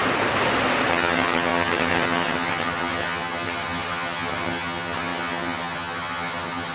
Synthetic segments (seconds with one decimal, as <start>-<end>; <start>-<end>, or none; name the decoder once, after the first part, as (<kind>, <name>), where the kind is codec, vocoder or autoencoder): 0.9-6.7 (vocoder, HiFi-GAN)